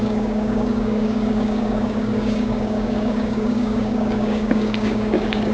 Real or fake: fake